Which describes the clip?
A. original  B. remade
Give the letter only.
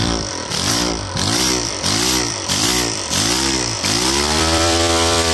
B